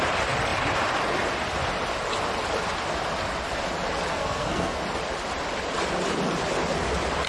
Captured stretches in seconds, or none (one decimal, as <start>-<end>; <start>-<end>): 0.0-4.1; 4.8-7.3